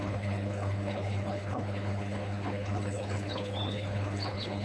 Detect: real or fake fake